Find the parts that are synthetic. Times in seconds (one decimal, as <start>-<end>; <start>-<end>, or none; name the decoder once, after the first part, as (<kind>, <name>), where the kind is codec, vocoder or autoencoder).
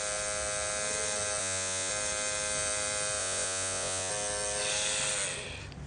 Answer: 1.4-1.9 (vocoder, Vocos); 3.2-4.1